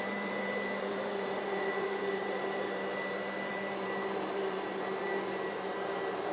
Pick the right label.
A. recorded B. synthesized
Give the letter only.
B